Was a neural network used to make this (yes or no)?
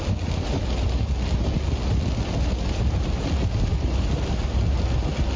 no